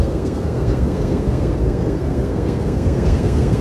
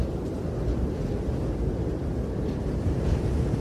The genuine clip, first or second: second